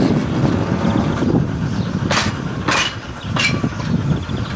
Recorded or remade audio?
recorded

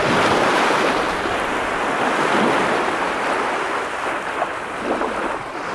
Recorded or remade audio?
recorded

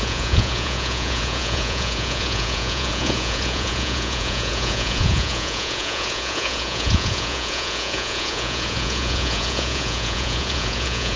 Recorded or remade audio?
remade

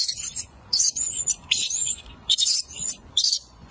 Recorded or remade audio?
remade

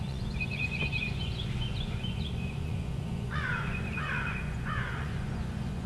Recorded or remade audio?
remade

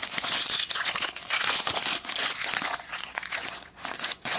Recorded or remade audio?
remade